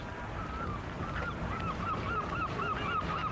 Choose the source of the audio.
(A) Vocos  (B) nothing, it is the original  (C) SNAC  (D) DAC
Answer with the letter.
B